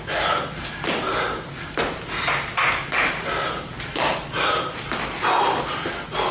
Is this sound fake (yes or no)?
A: no